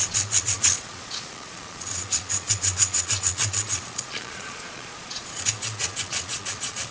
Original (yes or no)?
no